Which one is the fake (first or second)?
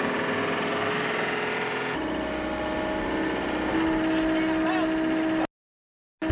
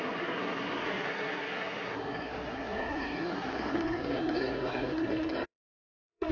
second